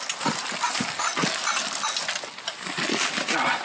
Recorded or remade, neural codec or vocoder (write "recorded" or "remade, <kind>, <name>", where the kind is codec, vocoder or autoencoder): recorded